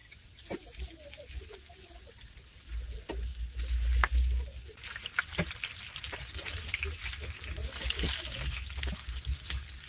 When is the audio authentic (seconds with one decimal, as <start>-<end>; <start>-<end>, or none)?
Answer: 0.0-9.9